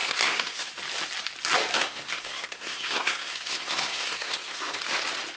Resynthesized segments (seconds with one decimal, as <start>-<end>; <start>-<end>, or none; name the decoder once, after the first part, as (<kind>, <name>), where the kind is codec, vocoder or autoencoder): 0.0-0.7 (codec, SNAC); 1.7-4.8